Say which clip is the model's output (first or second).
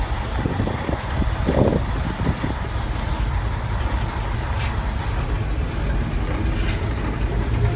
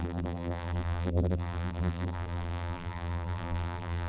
second